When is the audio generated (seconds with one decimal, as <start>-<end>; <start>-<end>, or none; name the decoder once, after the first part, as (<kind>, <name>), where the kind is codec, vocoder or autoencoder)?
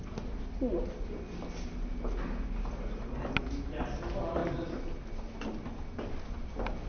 none